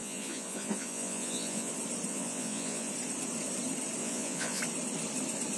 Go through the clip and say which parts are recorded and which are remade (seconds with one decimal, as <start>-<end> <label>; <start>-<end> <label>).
0.0-1.7 remade; 1.7-2.1 recorded; 2.1-2.9 remade; 2.9-4.0 recorded; 4.0-4.6 remade; 4.6-5.6 recorded